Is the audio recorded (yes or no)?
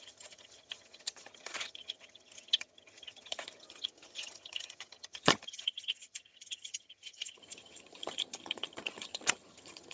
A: no